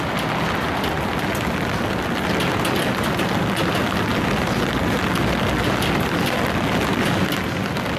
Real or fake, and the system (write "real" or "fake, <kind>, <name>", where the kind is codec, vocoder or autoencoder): real